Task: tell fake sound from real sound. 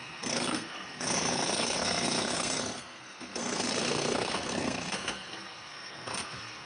fake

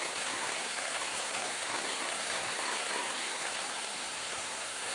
fake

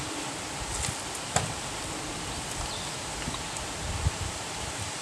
real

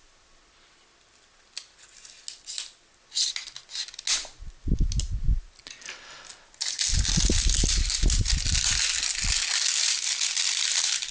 real